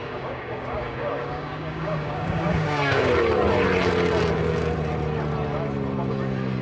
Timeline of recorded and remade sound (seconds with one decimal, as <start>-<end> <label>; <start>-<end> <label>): 0.0-3.1 remade; 3.1-6.6 recorded

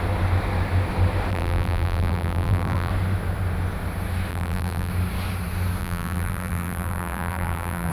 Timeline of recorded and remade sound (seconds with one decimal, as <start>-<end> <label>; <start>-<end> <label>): 0.0-1.3 recorded; 1.3-2.9 remade; 2.9-4.3 recorded; 4.3-4.9 remade; 4.9-5.8 recorded; 5.8-7.9 remade